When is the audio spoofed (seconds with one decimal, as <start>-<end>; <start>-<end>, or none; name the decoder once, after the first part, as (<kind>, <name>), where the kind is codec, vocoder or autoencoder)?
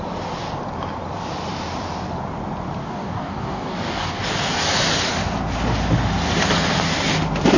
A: 2.8-4.2 (codec, DAC)